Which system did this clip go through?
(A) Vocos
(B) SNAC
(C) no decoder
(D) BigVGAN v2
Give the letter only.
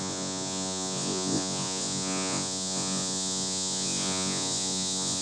A